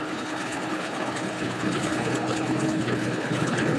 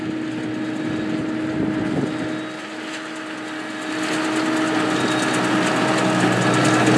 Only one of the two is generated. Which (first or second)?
first